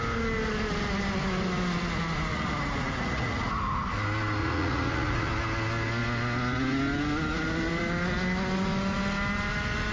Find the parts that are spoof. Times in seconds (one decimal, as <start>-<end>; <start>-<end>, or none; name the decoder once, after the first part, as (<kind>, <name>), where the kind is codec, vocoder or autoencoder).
2.3-3.5 (vocoder, Vocos); 4.4-5.3